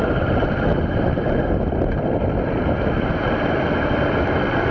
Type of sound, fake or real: real